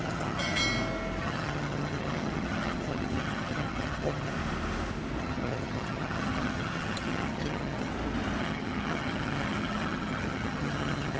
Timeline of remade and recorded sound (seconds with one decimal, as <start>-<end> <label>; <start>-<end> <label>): 0.0-0.6 remade; 0.6-1.2 recorded; 1.2-4.3 remade; 4.3-5.2 recorded; 5.2-7.9 remade; 7.9-8.4 recorded; 8.4-11.2 remade